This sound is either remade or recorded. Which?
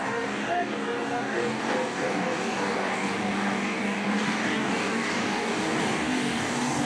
remade